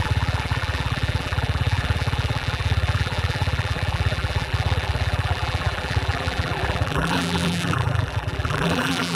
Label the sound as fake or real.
fake